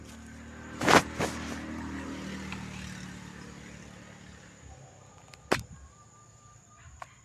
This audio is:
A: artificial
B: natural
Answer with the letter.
B